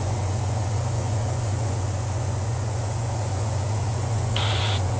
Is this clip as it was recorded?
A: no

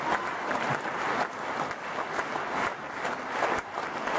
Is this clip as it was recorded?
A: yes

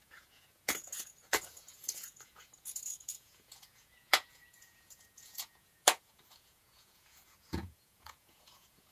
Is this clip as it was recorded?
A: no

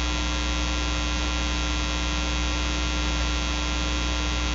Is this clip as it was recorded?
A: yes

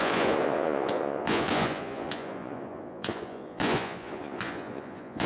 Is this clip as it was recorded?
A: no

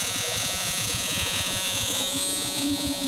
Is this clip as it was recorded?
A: no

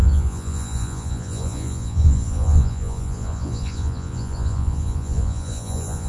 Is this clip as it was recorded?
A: no